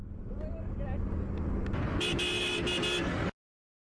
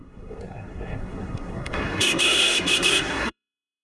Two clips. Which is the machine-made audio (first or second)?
second